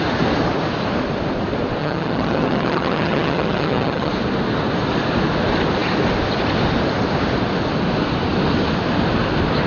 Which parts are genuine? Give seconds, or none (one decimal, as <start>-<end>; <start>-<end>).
0.0-1.8; 4.1-9.7